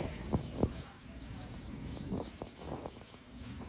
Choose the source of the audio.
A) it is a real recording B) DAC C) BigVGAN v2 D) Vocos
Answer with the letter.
B